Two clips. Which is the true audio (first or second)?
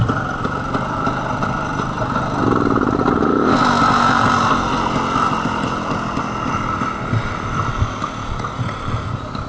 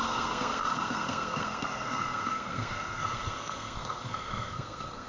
first